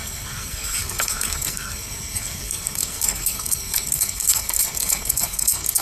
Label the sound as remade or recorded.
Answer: remade